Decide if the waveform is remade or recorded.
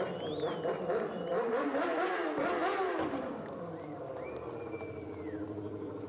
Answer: recorded